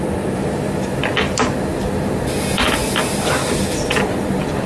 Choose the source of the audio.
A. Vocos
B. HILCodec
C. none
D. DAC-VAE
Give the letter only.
C